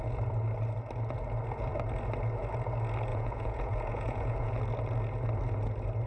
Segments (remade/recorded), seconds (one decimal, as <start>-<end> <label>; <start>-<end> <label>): 0.0-3.1 recorded; 3.1-4.6 remade; 4.6-6.1 recorded